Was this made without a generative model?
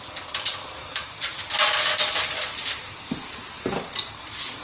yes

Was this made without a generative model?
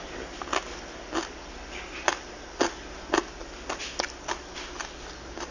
yes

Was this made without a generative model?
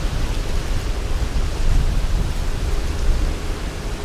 yes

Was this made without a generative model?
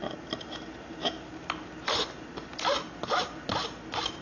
yes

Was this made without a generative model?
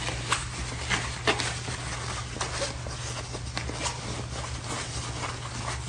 yes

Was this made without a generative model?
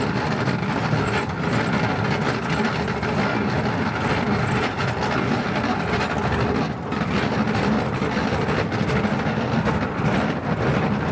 yes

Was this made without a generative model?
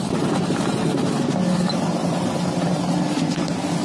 yes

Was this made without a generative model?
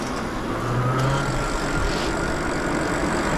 yes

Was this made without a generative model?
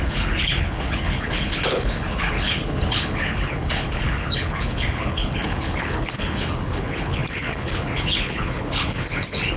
no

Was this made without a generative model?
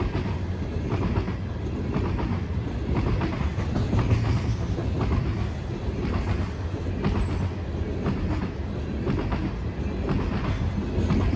yes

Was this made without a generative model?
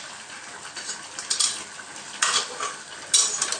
yes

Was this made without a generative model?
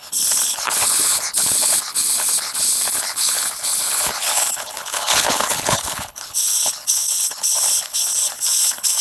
no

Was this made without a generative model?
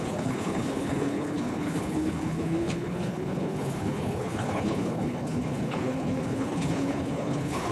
no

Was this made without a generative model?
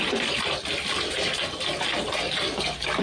yes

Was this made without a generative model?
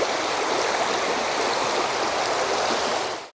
yes